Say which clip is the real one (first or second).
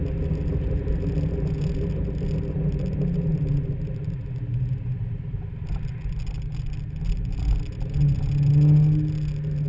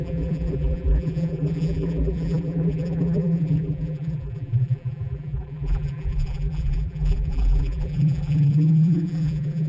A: first